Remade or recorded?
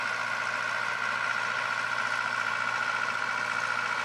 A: remade